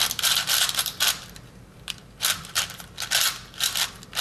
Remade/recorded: recorded